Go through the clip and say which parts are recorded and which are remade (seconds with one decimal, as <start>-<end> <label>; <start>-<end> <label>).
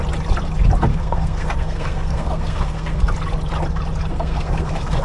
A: 0.0-0.9 recorded; 0.9-3.0 remade; 3.0-4.1 recorded; 4.1-5.0 remade